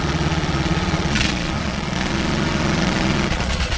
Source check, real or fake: fake